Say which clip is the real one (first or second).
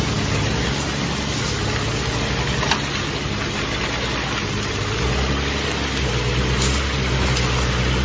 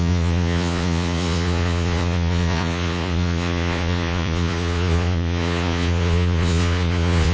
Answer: first